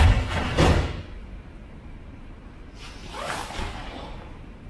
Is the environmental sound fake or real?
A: real